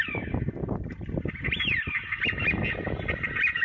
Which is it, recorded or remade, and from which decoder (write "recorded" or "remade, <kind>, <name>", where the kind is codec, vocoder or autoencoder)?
recorded